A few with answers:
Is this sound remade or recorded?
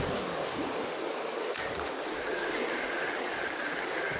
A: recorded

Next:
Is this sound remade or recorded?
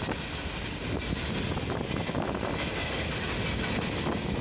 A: recorded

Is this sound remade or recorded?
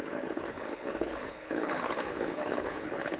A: remade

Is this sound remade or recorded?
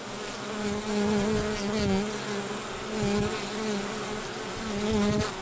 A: recorded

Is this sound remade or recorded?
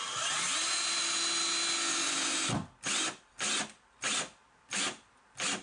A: recorded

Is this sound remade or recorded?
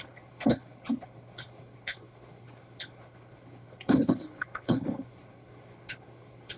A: remade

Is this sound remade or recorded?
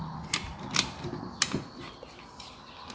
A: recorded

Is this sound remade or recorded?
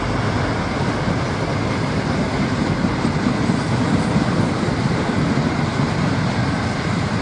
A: recorded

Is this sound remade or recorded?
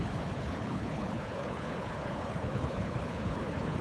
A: remade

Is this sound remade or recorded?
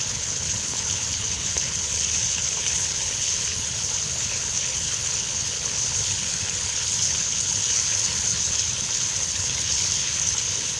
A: remade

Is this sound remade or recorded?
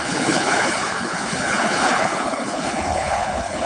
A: remade